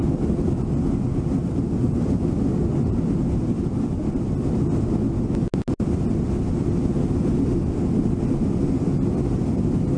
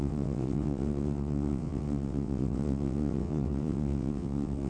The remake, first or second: second